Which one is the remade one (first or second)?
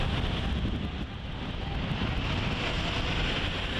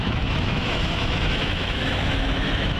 second